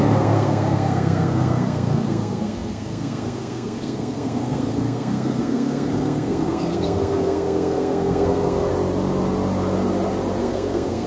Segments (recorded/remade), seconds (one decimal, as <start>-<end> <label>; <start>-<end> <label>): 0.0-8.7 remade; 8.7-10.4 recorded; 10.4-11.1 remade